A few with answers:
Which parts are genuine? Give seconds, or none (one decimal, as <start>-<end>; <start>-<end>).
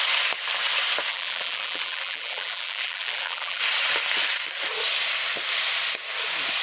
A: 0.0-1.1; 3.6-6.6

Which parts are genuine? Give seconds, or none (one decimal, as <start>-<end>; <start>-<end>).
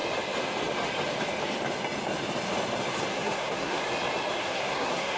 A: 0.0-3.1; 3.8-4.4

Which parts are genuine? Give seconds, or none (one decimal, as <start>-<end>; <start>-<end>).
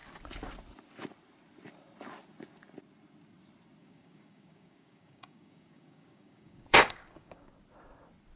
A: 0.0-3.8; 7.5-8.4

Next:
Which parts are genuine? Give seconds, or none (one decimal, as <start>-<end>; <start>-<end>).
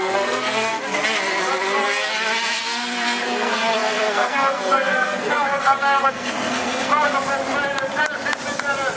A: 0.7-2.6; 6.9-9.0